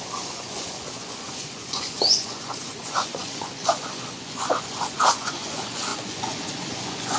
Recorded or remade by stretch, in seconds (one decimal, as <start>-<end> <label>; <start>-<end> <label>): 0.0-7.2 remade